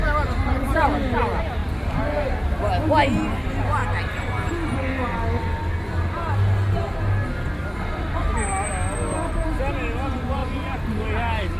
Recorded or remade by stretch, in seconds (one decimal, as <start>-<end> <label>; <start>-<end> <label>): 0.0-11.6 recorded